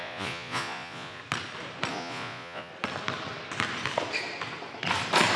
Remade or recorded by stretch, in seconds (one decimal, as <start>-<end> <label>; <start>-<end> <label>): 0.0-1.2 remade; 1.2-1.9 recorded; 1.9-2.7 remade; 2.7-5.4 recorded